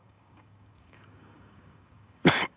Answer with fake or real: fake